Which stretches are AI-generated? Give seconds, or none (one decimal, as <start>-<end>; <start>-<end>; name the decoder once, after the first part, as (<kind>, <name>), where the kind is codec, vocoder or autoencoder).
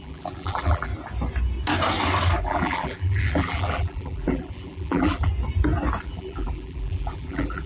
0.0-0.9 (vocoder, BigVGAN v2); 2.4-5.3; 6.0-7.7